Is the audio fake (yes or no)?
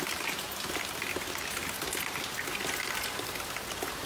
no